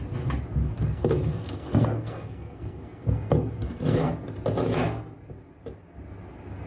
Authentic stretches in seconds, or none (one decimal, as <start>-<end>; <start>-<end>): 0.0-0.6; 4.1-6.7